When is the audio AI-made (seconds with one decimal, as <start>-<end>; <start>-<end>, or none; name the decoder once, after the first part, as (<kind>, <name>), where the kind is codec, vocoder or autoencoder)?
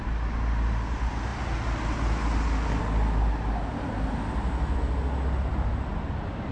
none